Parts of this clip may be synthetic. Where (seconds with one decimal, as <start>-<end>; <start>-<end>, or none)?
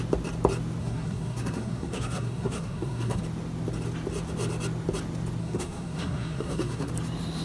0.8-3.2; 5.4-6.9